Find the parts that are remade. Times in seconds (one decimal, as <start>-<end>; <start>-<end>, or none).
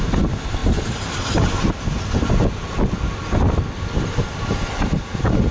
none